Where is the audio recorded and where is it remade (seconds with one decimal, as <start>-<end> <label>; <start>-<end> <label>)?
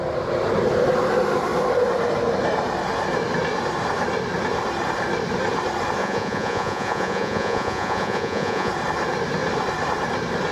0.0-6.0 recorded; 6.0-8.7 remade; 8.7-10.5 recorded